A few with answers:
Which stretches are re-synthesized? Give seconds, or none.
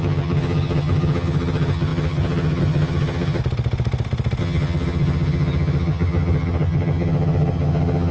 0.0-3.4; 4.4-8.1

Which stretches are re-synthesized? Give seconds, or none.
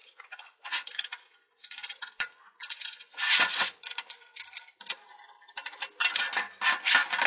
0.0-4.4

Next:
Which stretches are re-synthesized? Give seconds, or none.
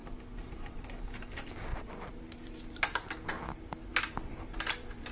0.0-0.6; 1.7-2.8; 3.9-5.1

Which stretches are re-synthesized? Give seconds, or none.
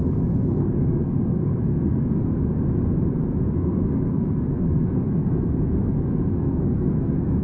0.0-2.5; 3.5-7.4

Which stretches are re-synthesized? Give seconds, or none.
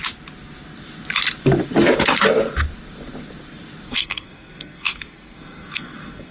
3.9-6.3